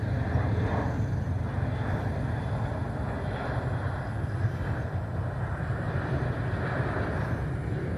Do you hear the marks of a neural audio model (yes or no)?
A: no